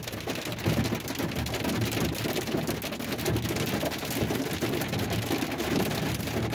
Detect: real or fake real